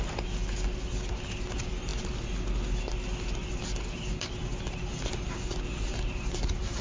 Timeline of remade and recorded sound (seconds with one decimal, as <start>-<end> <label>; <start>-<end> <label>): 0.0-5.9 recorded; 5.9-6.8 remade